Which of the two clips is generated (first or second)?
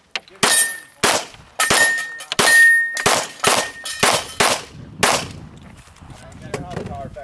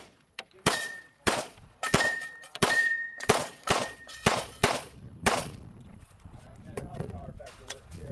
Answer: second